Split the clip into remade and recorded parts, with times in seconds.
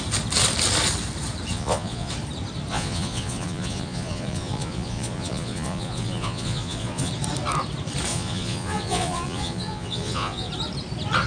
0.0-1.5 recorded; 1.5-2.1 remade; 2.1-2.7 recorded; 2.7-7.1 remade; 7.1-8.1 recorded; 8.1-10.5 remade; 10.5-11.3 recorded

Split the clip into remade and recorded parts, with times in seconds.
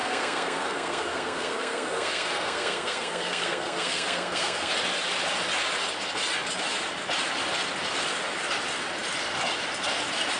0.0-4.7 remade; 4.7-10.4 recorded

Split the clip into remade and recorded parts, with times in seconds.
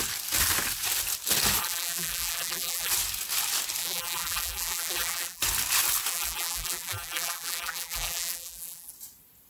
0.0-1.6 recorded; 1.6-2.9 remade; 2.9-3.8 recorded; 3.8-5.4 remade; 5.4-6.1 recorded; 6.1-8.9 remade; 8.9-9.5 recorded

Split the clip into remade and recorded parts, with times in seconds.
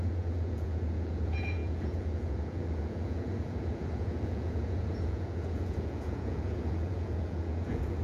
0.0-8.0 remade